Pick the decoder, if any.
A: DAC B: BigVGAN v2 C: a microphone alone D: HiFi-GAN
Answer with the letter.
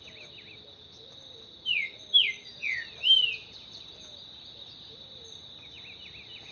C